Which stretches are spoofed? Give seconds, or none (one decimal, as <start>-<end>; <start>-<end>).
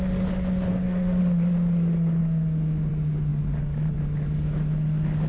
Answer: 0.7-1.2